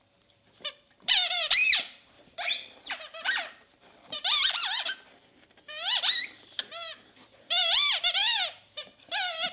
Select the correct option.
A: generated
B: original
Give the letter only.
A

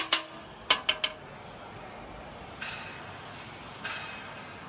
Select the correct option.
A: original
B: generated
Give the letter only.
A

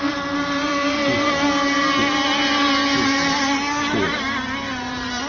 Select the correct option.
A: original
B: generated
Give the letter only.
A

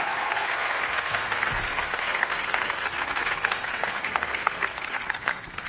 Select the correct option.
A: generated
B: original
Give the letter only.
A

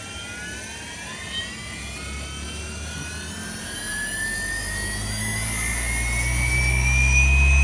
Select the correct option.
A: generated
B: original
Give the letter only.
B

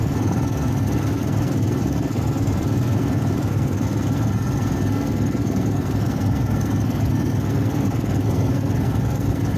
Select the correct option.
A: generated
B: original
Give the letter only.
A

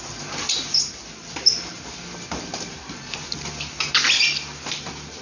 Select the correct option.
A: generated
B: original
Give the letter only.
B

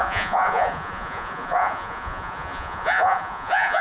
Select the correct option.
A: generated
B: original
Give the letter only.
A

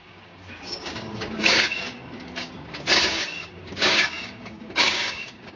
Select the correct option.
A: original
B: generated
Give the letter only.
B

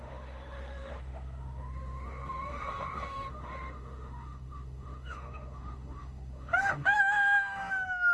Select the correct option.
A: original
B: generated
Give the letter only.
B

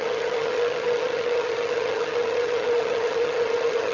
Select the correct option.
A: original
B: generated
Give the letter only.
B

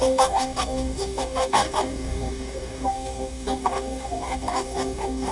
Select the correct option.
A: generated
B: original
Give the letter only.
A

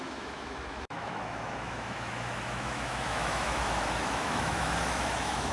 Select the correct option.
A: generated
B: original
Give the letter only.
A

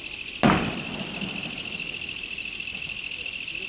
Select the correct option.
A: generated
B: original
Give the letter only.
B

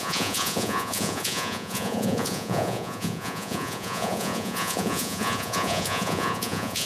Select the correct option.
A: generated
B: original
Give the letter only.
A